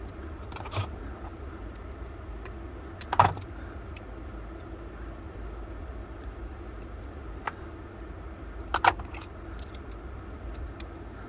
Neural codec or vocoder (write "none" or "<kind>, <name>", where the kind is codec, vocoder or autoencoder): none